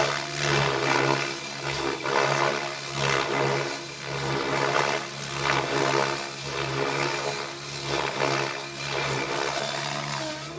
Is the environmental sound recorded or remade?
recorded